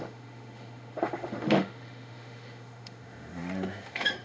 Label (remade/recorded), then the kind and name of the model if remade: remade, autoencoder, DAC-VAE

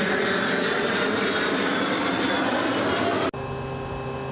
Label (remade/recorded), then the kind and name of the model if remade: recorded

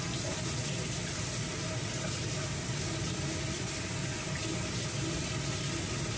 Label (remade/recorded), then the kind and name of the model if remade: recorded